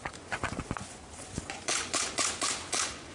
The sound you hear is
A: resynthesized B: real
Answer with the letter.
A